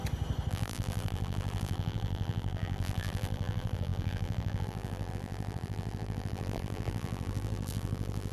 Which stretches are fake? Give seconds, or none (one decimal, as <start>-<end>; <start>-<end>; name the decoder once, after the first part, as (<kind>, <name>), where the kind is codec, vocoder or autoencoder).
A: 0.5-8.3 (vocoder, BigVGAN v2)